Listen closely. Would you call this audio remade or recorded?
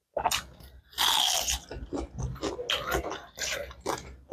recorded